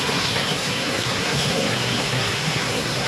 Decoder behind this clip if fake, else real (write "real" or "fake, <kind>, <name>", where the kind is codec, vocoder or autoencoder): fake, codec, SNAC